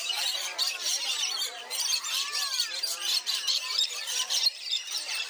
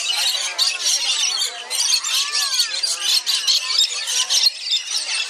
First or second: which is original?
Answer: second